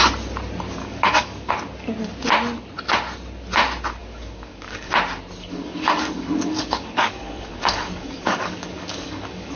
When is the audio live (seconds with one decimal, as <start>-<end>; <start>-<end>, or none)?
0.0-0.8; 1.5-4.0; 4.9-5.5